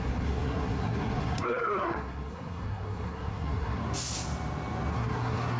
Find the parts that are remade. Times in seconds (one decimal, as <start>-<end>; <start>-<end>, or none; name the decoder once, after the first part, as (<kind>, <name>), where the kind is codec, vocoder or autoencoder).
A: 0.0-3.8 (codec, SNAC); 4.9-5.6